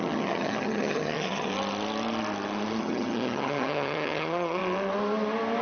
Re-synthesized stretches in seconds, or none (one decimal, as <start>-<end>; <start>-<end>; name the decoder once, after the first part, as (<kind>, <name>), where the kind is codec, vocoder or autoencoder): 0.0-1.5 (vocoder, HiFi-GAN); 2.8-4.6